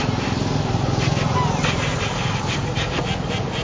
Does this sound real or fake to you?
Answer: real